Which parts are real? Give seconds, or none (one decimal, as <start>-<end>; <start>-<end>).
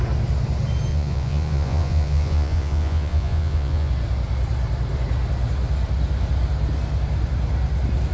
0.0-0.9; 3.9-8.1